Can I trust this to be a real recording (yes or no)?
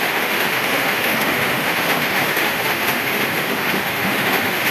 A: no